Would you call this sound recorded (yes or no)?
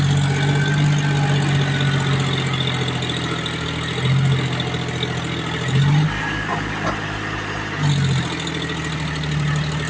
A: yes